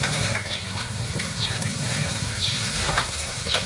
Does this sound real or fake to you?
fake